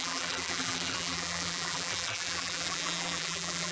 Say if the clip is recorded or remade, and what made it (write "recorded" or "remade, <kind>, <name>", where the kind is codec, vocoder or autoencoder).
remade, vocoder, BigVGAN v2